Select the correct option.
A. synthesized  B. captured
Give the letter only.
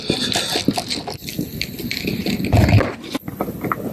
B